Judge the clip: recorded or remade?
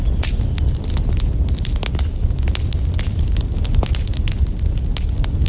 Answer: recorded